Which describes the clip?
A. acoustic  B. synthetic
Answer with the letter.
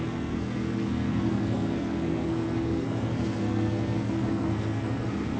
B